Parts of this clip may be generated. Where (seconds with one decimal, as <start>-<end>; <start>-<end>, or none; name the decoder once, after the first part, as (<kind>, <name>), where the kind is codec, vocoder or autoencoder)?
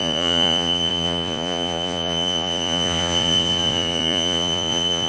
0.0-5.1 (vocoder, Vocos)